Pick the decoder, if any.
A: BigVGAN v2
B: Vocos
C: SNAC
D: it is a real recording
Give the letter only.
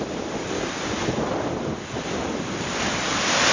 A